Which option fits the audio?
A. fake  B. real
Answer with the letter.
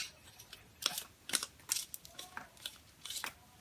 B